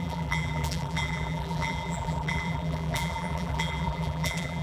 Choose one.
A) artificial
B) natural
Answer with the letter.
A